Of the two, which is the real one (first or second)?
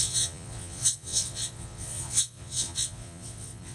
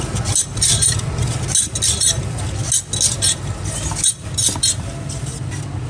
second